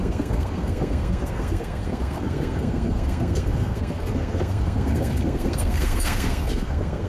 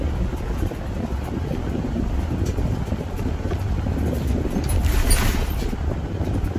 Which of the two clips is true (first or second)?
second